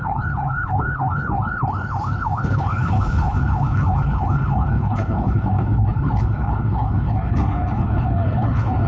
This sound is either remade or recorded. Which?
remade